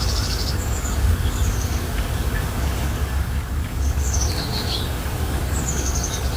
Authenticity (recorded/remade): remade